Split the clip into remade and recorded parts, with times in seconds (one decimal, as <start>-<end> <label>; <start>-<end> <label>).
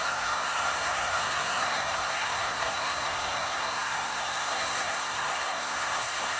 0.0-6.4 remade